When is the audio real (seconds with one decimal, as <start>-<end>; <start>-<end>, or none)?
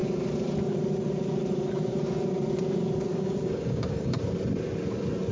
0.0-3.1; 4.1-5.3